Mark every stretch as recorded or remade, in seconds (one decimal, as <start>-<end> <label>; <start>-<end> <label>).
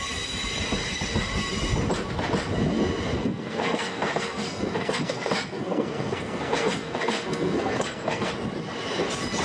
0.0-3.2 recorded; 3.2-8.3 remade; 8.3-9.4 recorded